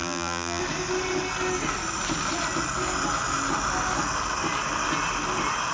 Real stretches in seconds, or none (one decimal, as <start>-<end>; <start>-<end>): 0.6-5.7